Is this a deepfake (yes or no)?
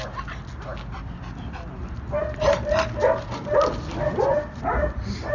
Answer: no